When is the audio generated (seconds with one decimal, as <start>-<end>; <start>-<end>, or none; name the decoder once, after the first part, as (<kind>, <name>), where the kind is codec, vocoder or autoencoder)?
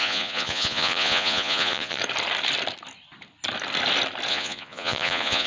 0.0-2.0 (vocoder, Vocos); 4.3-5.5